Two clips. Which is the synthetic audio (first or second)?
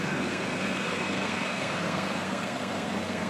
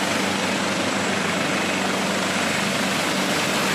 first